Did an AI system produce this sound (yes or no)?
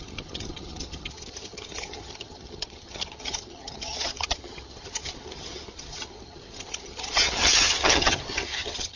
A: yes